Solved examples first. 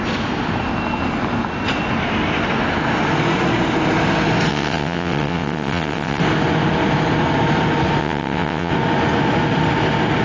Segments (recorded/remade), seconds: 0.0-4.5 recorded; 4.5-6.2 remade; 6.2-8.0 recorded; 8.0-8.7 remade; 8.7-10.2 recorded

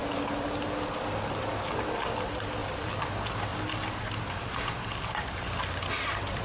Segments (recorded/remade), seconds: 0.0-2.6 recorded; 2.6-3.1 remade; 3.1-3.5 recorded; 3.5-6.4 remade

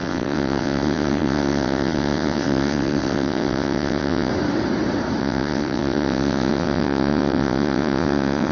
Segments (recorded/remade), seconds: 0.0-4.3 remade; 4.3-5.2 recorded; 5.2-8.5 remade

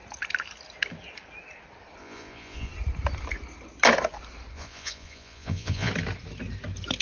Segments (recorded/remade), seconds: 0.0-2.0 recorded; 2.0-2.7 remade; 2.7-4.5 recorded; 4.5-5.9 remade; 5.9-7.0 recorded